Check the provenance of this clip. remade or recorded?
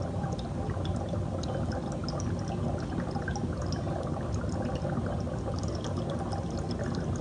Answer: recorded